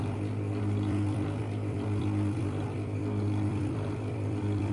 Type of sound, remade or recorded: remade